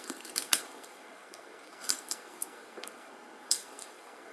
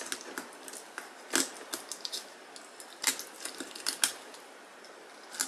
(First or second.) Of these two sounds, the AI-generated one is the first